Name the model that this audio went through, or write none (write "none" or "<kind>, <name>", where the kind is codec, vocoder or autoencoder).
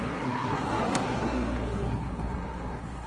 codec, SNAC